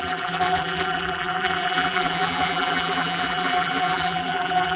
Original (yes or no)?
no